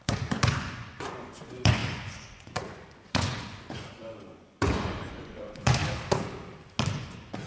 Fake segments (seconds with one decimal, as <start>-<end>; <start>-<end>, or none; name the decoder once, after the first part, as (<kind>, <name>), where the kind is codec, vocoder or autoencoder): 0.0-5.8 (vocoder, Vocos); 6.9-7.5